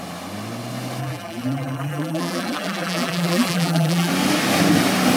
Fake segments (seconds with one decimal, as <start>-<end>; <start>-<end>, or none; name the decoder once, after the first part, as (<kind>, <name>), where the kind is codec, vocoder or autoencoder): 1.0-4.1 (vocoder, BigVGAN v2)